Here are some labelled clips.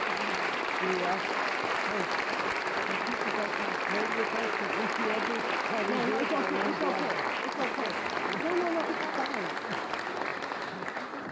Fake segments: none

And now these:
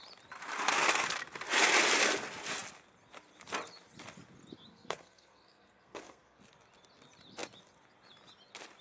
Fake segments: 4.7-6.4 (codec, SNAC)

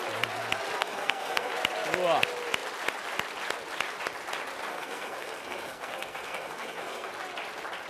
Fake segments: 0.8-1.5 (codec, SNAC); 4.7-7.1

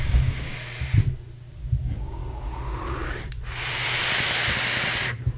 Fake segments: 0.0-0.5 (codec, DAC); 1.8-2.2

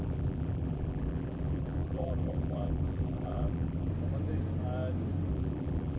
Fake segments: 0.0-3.9 (vocoder, BigVGAN v2); 5.3-6.0

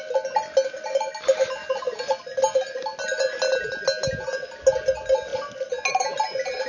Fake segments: none